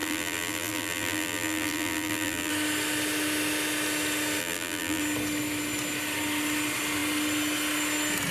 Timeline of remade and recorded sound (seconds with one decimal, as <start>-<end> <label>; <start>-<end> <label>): 0.0-2.5 remade; 2.5-4.4 recorded; 4.4-5.0 remade; 5.0-8.3 recorded